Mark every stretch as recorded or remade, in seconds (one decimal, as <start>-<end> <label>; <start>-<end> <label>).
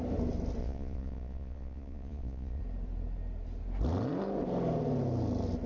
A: 0.0-0.6 recorded; 0.6-2.6 remade; 2.6-5.7 recorded